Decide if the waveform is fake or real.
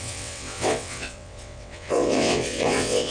fake